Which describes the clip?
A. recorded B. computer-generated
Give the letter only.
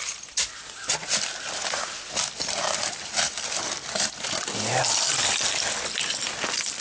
A